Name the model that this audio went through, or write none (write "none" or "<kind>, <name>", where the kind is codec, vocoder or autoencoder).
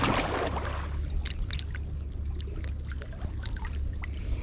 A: none